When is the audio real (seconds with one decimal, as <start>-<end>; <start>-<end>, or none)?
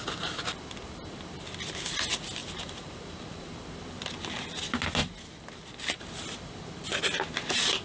0.0-2.4; 3.6-7.8